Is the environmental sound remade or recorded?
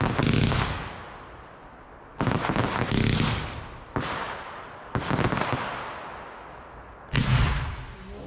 recorded